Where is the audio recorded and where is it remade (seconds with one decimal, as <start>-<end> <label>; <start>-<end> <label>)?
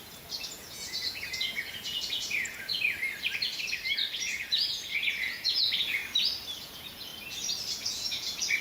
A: 0.0-2.7 remade; 2.7-4.2 recorded; 4.2-6.0 remade; 6.0-6.6 recorded; 6.6-7.1 remade; 7.1-7.7 recorded; 7.7-8.6 remade